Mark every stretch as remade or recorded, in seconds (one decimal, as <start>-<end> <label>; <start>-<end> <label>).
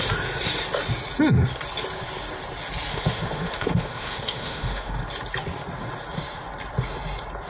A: 0.0-2.9 recorded; 2.9-5.0 remade; 5.0-7.5 recorded